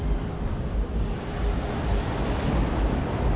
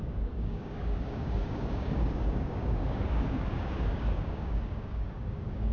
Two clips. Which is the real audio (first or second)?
first